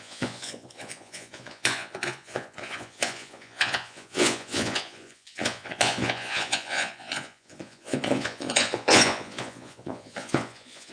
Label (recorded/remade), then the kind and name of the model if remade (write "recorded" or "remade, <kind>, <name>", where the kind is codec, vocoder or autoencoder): remade, vocoder, Vocos